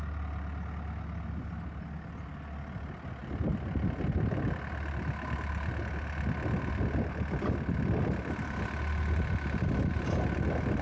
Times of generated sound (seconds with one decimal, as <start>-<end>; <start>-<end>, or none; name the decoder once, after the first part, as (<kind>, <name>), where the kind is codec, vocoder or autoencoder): none